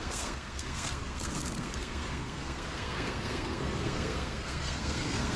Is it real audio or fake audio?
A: fake